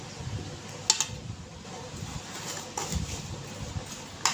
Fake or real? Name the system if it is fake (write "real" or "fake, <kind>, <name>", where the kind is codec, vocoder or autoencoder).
real